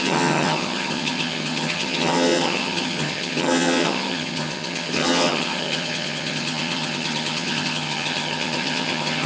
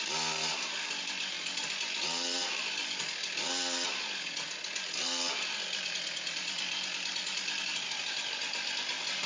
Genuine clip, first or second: second